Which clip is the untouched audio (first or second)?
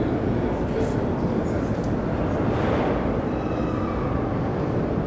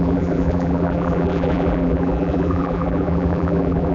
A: first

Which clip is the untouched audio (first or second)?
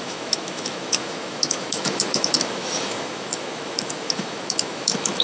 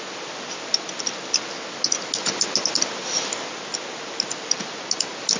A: second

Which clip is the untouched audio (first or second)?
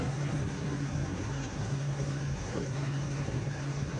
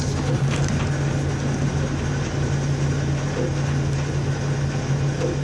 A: second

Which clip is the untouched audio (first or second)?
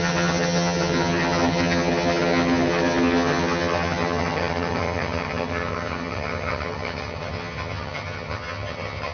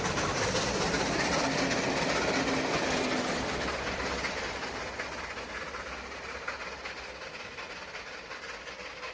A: second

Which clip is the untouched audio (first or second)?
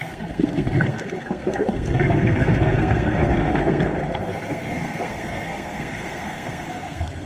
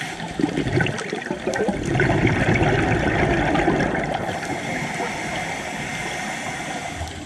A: second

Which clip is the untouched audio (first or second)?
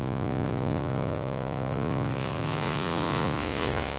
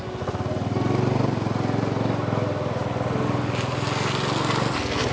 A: second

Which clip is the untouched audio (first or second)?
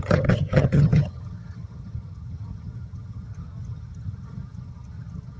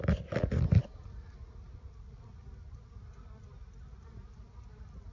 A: second